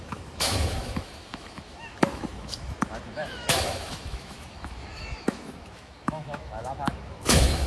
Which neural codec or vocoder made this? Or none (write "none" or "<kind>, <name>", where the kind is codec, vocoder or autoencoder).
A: autoencoder, DAC-VAE